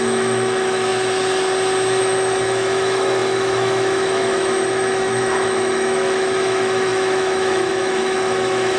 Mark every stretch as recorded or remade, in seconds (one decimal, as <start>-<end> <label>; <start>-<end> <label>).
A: 0.0-0.9 remade; 0.9-2.0 recorded; 2.0-8.8 remade